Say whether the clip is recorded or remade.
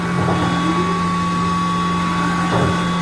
recorded